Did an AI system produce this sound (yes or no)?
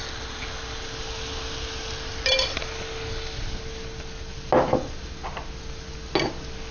no